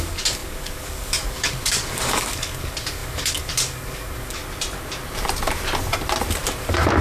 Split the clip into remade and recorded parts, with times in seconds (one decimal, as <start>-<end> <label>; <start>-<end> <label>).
0.0-4.4 remade; 4.4-6.6 recorded; 6.6-7.0 remade

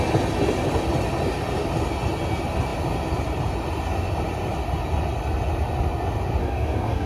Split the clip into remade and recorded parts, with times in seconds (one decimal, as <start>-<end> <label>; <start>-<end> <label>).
0.0-6.4 recorded; 6.4-7.1 remade

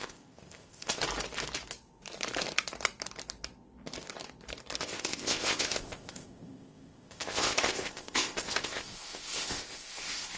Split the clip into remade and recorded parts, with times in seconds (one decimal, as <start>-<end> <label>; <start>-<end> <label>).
0.0-1.0 remade; 1.0-4.8 recorded; 4.8-10.4 remade

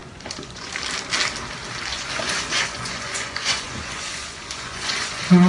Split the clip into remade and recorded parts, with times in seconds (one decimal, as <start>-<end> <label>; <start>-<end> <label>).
0.0-0.7 remade; 0.7-1.9 recorded; 1.9-5.5 remade

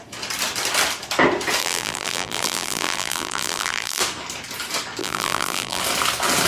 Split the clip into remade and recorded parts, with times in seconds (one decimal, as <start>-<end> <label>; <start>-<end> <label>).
0.0-1.6 recorded; 1.6-4.0 remade; 4.0-5.0 recorded; 5.0-5.8 remade; 5.8-6.5 recorded

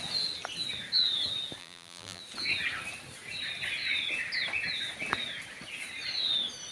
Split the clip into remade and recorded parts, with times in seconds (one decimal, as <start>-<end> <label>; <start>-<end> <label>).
0.0-1.6 recorded; 1.6-2.2 remade; 2.2-6.7 recorded

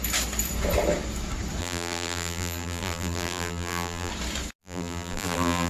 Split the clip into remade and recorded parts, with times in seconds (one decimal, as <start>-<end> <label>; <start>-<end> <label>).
0.0-1.6 recorded; 1.6-4.1 remade; 4.1-4.6 recorded; 4.6-5.7 remade